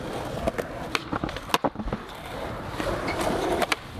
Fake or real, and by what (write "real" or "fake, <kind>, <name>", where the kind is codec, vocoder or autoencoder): real